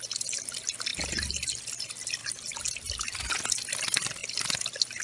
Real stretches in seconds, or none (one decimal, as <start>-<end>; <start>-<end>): 0.0-5.0